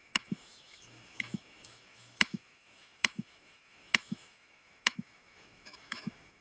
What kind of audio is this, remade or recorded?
remade